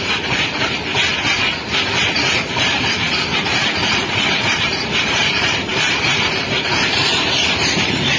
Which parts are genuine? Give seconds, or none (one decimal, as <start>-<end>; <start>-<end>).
0.9-2.6

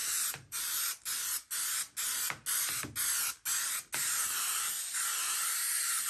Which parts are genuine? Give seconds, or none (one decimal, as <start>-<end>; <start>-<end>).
0.8-6.1

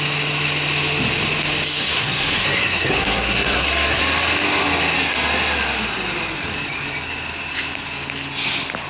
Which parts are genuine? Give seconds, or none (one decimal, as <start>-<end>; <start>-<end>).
0.0-1.8; 4.0-8.9

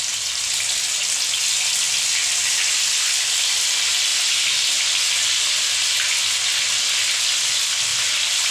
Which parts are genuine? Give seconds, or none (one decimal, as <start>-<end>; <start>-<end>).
0.0-7.9